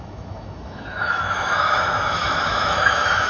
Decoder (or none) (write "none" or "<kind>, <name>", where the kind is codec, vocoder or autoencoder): autoencoder, DAC-VAE